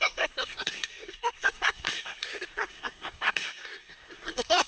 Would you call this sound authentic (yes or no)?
no